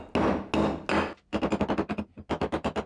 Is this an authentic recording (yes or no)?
yes